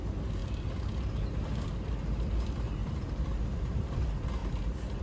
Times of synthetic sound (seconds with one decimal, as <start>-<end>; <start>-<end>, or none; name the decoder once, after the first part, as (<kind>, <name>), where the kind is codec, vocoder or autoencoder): 2.8-4.0 (vocoder, BigVGAN v2)